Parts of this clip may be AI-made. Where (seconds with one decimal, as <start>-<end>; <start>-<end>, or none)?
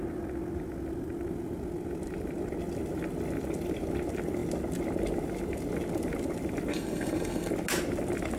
6.7-7.5